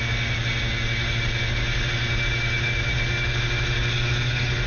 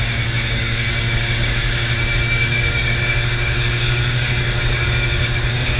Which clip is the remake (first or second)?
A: second